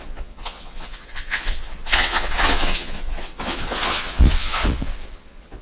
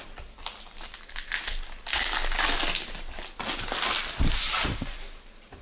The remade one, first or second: first